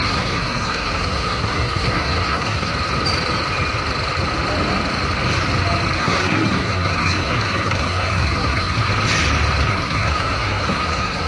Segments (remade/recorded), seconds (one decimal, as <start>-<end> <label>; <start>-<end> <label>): 0.0-2.7 remade; 2.7-6.0 recorded; 6.0-8.9 remade; 8.9-9.7 recorded; 9.7-11.3 remade